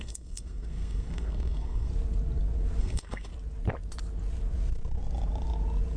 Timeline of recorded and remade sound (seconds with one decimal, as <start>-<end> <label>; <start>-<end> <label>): 0.0-1.9 remade; 1.9-2.8 recorded; 2.8-3.3 remade; 3.3-6.0 recorded